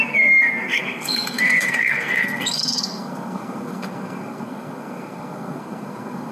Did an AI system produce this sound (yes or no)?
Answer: yes